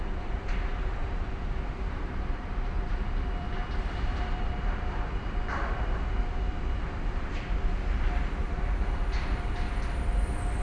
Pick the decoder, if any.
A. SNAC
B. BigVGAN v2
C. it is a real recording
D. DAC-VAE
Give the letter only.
B